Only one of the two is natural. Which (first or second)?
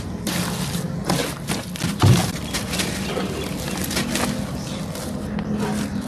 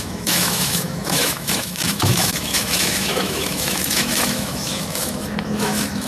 first